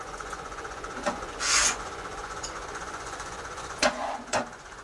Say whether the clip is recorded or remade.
remade